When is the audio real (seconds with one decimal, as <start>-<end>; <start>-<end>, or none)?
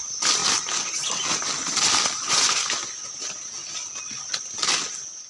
0.0-5.3